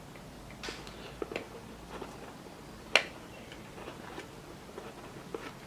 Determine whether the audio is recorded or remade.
recorded